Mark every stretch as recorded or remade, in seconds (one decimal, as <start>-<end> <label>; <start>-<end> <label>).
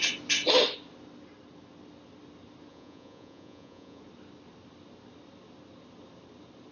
0.0-2.7 recorded; 2.7-4.0 remade; 4.0-6.7 recorded